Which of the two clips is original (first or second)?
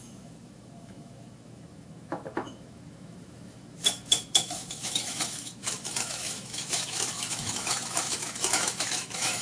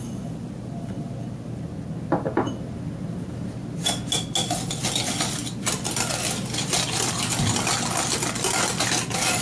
second